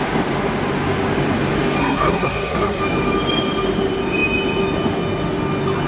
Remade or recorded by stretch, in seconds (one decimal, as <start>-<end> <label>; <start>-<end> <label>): 0.0-1.8 recorded; 1.8-2.8 remade; 2.8-5.9 recorded